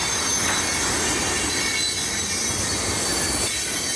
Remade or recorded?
recorded